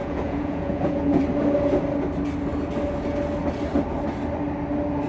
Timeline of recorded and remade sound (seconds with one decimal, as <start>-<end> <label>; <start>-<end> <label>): 0.0-1.2 remade; 1.2-5.1 recorded